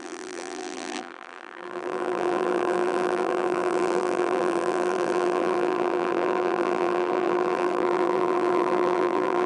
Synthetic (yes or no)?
yes